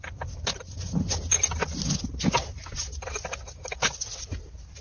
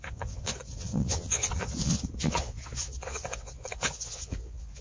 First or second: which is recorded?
first